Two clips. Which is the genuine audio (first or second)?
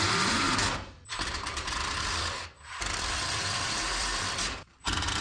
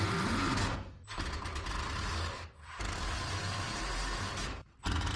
second